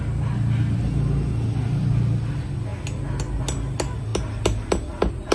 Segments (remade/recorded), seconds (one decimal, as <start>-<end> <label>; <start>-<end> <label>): 0.0-5.3 recorded